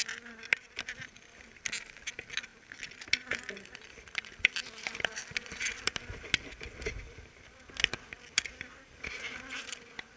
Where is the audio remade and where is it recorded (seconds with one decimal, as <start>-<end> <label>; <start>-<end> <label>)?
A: 0.0-10.2 recorded